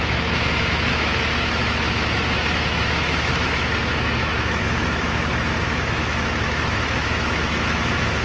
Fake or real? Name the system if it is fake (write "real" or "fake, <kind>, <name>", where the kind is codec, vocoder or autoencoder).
fake, autoencoder, DAC-VAE